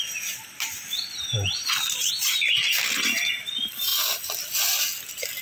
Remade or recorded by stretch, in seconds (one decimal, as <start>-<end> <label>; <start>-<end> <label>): 0.0-5.4 recorded